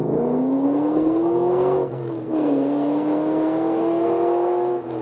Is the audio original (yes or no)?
no